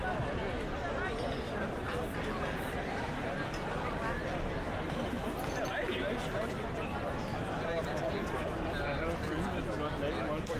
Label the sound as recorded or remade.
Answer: recorded